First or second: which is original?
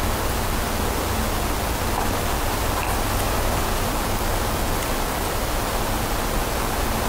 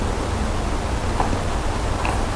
first